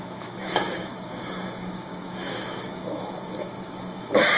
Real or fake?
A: fake